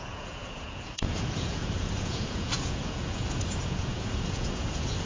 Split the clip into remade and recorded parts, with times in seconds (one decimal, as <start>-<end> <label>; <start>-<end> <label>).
0.0-5.0 remade